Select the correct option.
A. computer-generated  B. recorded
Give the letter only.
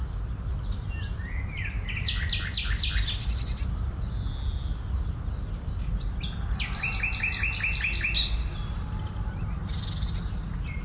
B